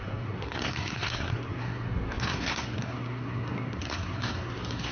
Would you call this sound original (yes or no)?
no